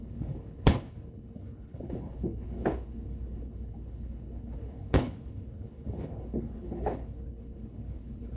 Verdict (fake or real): fake